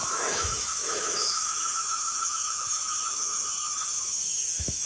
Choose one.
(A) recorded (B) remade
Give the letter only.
B